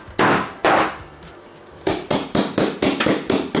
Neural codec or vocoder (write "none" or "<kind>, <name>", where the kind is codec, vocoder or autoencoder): none